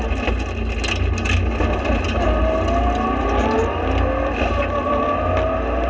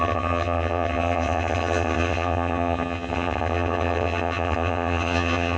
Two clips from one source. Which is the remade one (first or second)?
second